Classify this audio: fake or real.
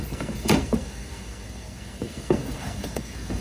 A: fake